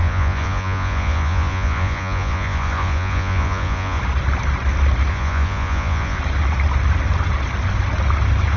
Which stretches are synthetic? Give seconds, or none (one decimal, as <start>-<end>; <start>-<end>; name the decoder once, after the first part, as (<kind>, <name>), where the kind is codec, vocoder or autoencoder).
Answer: 0.0-4.0 (vocoder, Vocos); 5.1-6.2